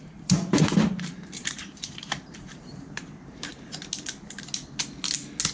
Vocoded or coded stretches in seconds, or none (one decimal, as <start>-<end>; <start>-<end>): 0.0-3.5

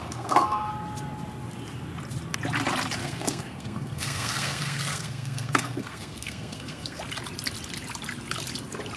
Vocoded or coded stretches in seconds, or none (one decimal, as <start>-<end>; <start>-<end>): 0.0-0.7; 3.0-7.0

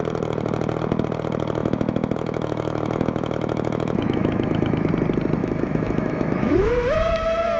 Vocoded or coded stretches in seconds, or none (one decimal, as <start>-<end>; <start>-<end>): 1.6-4.9; 5.4-6.7

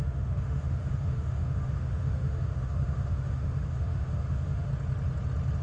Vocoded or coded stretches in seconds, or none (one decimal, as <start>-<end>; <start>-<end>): 0.0-4.7

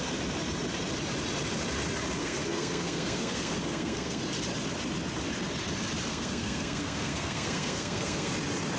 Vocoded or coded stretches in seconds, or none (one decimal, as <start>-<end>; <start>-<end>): 2.2-4.2; 6.1-8.3

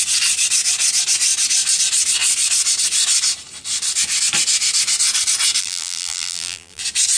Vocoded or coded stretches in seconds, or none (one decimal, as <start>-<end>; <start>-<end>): 5.6-6.8

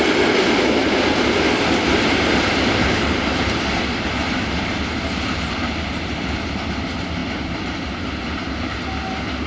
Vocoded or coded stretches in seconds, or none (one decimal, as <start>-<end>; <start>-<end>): 0.8-4.1